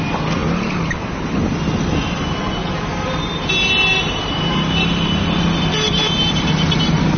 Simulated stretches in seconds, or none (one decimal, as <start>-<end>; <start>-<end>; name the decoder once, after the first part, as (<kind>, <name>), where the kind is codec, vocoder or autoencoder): none